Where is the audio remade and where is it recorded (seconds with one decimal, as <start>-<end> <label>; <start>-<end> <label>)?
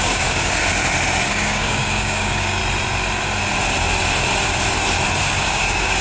0.0-0.6 remade; 0.6-1.3 recorded; 1.3-2.6 remade; 2.6-5.3 recorded; 5.3-6.0 remade